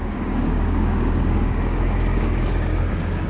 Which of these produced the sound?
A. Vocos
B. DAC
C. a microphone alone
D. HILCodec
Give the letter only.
B